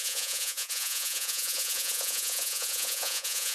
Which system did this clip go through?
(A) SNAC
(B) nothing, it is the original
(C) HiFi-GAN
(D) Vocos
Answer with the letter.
D